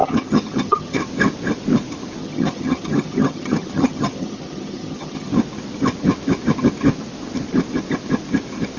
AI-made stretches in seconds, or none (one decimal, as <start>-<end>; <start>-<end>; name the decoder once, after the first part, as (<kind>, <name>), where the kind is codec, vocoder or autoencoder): 0.0-1.0 (vocoder, HiFi-GAN); 2.2-5.3

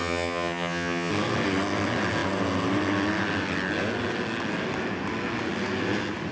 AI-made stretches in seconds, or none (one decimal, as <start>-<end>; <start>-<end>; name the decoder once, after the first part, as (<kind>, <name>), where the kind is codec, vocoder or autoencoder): 0.0-1.1 (vocoder, HiFi-GAN)

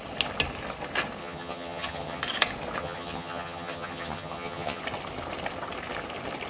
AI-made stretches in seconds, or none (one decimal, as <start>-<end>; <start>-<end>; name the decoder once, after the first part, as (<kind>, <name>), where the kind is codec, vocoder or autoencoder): 1.2-2.2 (vocoder, HiFi-GAN); 2.8-4.8

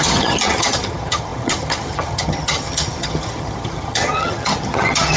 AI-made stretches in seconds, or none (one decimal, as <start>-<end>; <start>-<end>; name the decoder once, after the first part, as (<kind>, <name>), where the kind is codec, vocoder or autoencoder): 0.0-5.2 (vocoder, HiFi-GAN)

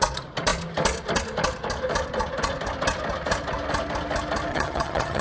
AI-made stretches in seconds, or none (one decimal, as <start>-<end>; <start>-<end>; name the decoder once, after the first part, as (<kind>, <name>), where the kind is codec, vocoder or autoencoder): 4.5-5.2 (vocoder, HiFi-GAN)